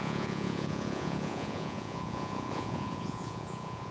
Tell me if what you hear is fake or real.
fake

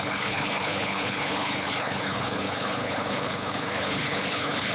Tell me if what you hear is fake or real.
fake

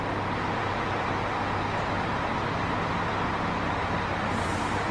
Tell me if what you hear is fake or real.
real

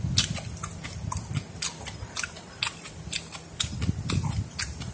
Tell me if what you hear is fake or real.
real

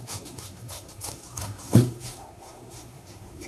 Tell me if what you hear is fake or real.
fake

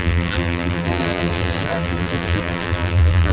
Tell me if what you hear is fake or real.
fake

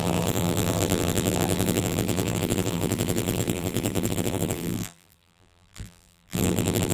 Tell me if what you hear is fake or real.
fake